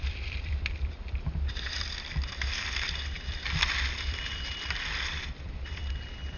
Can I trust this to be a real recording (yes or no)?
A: no